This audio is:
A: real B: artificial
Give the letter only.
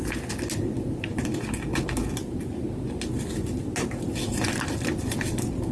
A